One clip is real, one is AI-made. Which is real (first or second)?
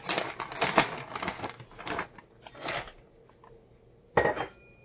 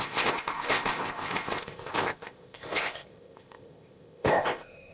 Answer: first